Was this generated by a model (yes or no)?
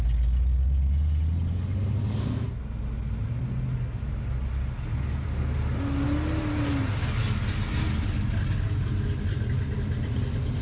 no